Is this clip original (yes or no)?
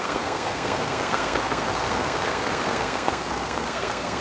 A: no